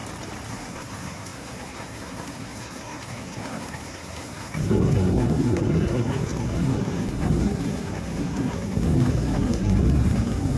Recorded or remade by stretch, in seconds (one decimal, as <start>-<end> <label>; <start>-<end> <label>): 0.0-0.5 recorded; 0.5-10.6 remade